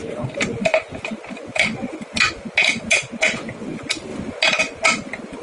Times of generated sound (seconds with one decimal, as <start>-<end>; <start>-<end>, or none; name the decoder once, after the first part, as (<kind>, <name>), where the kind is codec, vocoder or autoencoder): none